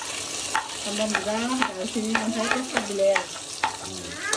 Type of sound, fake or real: real